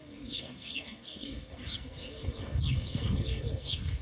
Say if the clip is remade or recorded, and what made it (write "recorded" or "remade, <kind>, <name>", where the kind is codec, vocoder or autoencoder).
remade, codec, SNAC